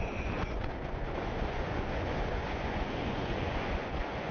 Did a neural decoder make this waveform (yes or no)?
yes